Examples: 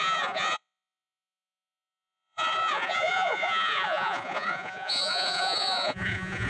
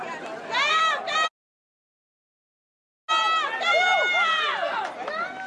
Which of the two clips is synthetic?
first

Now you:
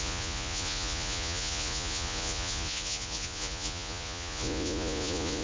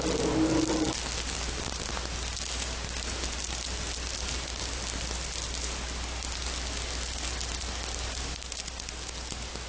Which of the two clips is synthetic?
first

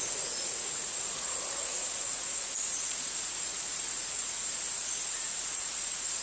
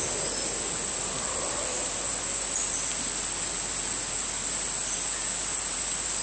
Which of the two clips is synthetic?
first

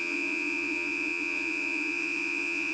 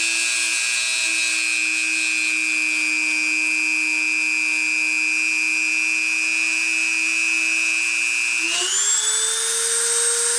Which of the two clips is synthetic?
first